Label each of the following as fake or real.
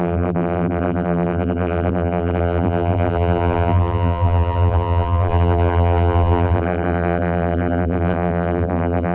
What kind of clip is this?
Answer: fake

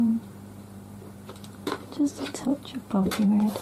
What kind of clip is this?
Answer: fake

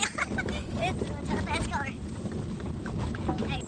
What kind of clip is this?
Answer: real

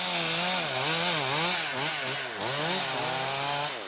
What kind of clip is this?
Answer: real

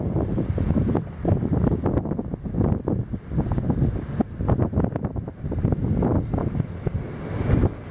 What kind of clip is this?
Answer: real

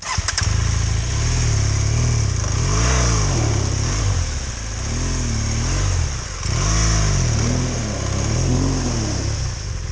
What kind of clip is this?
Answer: real